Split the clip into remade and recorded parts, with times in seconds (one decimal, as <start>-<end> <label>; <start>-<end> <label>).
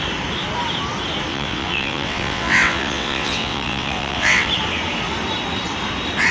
0.0-1.3 recorded; 1.3-4.5 remade; 4.5-6.3 recorded